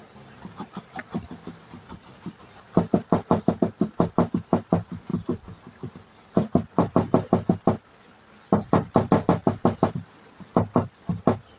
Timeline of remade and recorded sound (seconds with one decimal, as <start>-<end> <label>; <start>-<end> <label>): 0.0-11.6 recorded